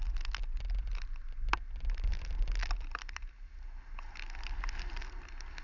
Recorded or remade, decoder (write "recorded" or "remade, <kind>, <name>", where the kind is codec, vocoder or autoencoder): recorded